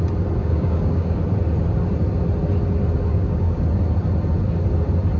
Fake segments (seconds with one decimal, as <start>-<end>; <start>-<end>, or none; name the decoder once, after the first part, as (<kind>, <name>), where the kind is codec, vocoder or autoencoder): 0.4-1.2 (codec, DAC); 3.1-3.6